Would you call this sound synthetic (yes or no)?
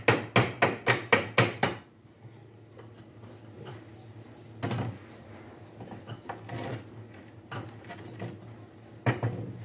no